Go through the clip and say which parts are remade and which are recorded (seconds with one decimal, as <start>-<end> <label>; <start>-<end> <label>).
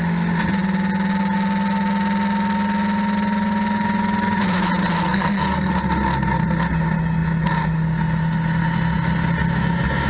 0.0-5.1 recorded; 5.1-5.7 remade; 5.7-10.1 recorded